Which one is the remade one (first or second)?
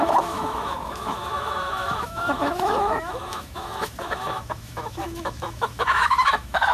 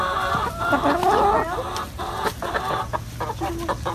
first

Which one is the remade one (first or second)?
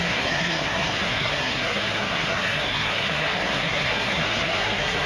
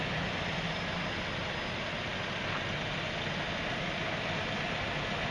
first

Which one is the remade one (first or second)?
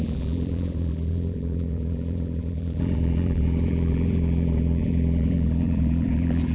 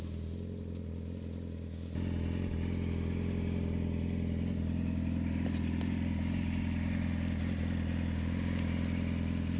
first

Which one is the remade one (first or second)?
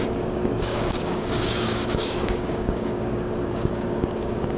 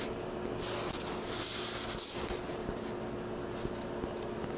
first